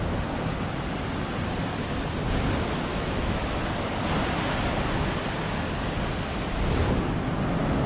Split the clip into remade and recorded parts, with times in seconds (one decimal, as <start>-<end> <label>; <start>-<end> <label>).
0.0-2.9 recorded; 2.9-3.6 remade; 3.6-7.9 recorded